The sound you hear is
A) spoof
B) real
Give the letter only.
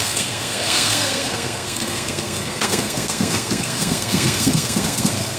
A